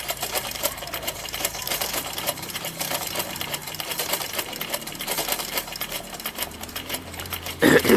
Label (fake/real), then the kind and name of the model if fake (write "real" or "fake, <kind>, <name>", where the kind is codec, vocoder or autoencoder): fake, vocoder, BigVGAN v2